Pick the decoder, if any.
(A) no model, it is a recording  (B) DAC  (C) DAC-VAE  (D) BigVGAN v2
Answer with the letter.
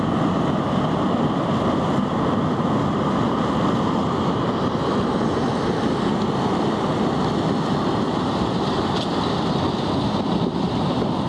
A